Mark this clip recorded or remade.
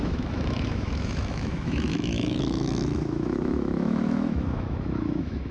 remade